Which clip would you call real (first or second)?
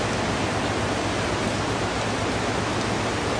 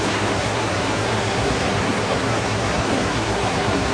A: first